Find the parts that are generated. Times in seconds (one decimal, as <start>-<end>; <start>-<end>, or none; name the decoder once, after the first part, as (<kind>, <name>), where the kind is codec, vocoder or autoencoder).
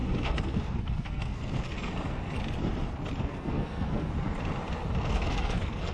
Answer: 0.0-2.4 (codec, SNAC); 3.2-4.1; 5.1-5.9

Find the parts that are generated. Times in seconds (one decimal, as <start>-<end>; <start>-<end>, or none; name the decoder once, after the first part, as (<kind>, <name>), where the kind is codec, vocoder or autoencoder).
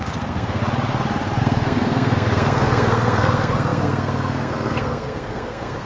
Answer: 0.0-0.6 (codec, SNAC); 1.4-5.9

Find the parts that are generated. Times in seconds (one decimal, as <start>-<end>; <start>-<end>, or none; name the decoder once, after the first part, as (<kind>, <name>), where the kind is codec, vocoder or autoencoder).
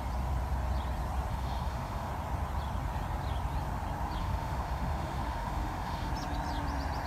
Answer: 1.3-2.1 (autoencoder, DAC-VAE); 4.2-6.1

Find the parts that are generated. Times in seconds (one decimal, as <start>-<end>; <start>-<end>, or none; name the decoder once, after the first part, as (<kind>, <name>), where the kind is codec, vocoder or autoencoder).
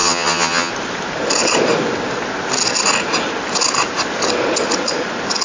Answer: 0.0-0.7 (vocoder, HiFi-GAN)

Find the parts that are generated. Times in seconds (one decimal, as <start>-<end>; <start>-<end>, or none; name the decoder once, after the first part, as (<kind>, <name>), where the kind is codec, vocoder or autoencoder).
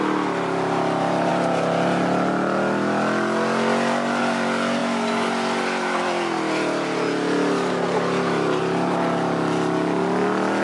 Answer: none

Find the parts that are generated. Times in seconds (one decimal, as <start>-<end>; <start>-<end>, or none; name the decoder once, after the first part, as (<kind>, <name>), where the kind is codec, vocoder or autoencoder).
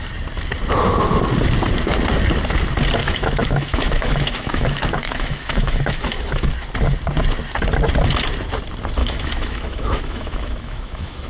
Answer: 3.0-6.5 (autoencoder, DAC-VAE); 9.0-11.3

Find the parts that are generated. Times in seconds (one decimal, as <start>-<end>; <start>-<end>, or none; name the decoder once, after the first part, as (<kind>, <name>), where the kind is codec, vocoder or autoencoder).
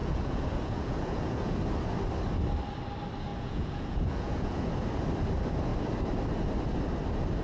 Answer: 0.0-1.6 (vocoder, Vocos); 3.3-4.7